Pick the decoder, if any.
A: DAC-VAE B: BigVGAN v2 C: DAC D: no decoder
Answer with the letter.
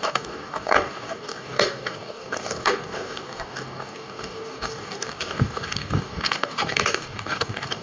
C